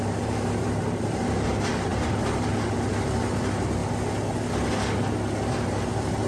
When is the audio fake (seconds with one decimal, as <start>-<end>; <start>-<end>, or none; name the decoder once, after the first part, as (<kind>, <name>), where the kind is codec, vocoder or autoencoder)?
0.0-3.8 (vocoder, BigVGAN v2); 5.5-6.3